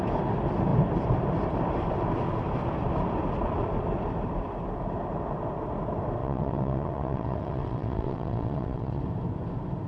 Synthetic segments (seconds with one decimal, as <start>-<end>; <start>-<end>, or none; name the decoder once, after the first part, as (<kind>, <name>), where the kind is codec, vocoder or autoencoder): 6.2-9.0 (vocoder, WaveNeXt)